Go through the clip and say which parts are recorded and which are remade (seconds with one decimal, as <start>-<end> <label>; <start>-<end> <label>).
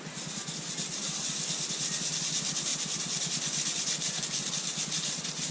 0.0-5.5 recorded